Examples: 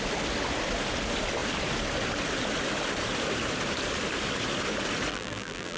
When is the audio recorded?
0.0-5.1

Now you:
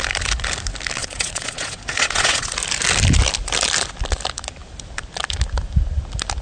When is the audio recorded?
0.0-1.0; 2.5-6.4

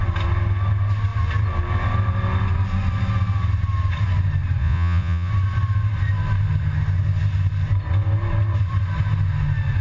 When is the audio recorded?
0.0-4.6; 5.3-9.8

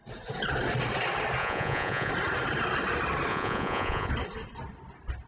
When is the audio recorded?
0.0-1.4; 2.1-3.3; 4.1-5.3

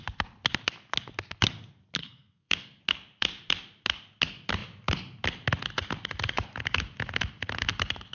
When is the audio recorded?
0.0-2.0; 2.8-8.1